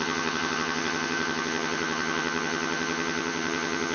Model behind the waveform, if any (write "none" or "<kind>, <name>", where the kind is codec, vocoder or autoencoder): vocoder, HiFi-GAN